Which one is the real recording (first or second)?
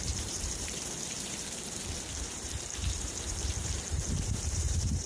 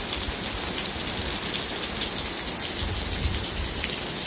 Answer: second